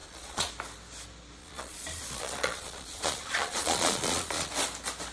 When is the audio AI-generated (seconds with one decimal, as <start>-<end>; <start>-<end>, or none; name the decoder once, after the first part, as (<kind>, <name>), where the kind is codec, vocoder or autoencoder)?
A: 0.0-0.5 (vocoder, Vocos); 1.4-4.5